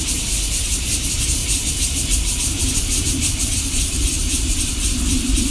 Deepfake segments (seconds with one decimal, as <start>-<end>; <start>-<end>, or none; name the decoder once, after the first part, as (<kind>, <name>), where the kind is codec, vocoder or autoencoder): 0.0-5.5 (vocoder, BigVGAN v2)